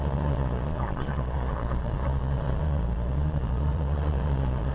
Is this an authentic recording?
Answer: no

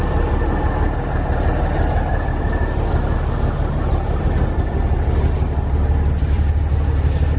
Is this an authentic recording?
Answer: yes